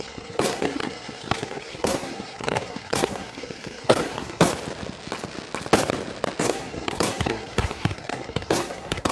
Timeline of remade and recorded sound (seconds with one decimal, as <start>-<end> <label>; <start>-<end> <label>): 0.0-4.5 remade; 4.5-6.4 recorded; 6.4-9.1 remade